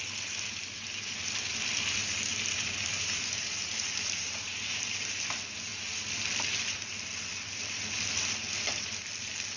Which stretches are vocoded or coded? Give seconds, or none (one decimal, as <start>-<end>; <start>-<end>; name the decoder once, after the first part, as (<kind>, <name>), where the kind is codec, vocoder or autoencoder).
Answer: 2.3-5.2 (vocoder, BigVGAN v2)